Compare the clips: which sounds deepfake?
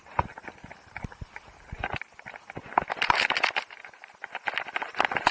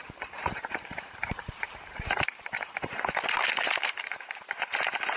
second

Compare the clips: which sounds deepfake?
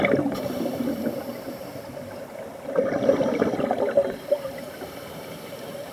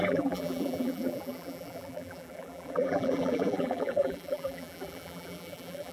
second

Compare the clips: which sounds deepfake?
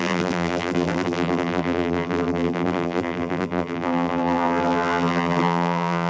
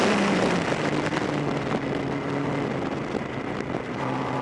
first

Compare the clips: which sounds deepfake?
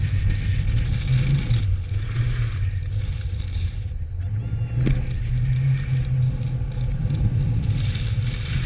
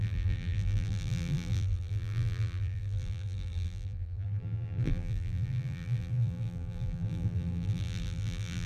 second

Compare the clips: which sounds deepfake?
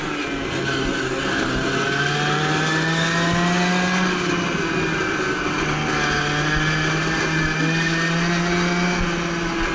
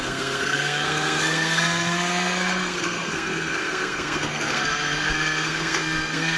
second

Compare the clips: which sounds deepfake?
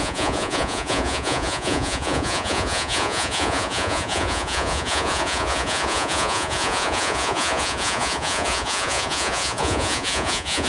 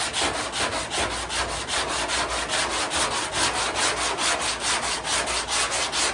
first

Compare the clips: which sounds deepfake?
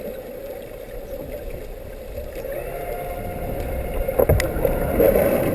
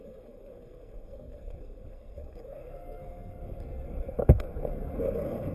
second